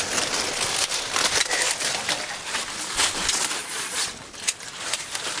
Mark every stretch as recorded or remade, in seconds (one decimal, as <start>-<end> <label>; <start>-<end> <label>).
0.0-3.6 recorded; 3.6-4.1 remade; 4.1-5.4 recorded